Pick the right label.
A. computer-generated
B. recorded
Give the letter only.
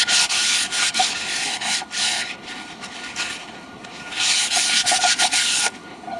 A